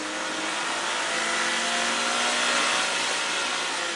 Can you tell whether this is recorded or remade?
recorded